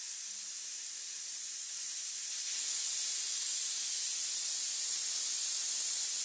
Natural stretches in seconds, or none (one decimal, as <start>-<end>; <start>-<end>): 2.1-5.2